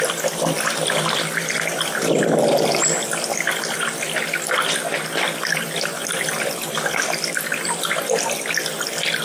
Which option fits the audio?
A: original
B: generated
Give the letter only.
A